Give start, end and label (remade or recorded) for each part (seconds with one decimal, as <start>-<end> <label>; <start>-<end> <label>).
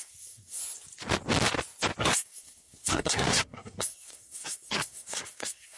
0.0-0.6 remade; 0.6-2.0 recorded; 2.0-5.8 remade